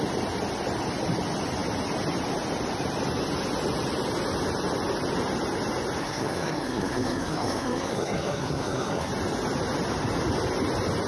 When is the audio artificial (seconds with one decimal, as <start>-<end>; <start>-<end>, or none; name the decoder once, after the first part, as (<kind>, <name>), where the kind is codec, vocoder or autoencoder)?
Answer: 6.0-9.1 (codec, SNAC)